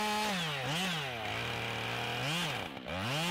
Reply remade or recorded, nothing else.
recorded